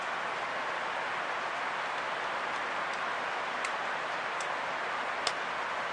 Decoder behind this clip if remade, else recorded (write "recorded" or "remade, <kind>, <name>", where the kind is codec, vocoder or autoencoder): recorded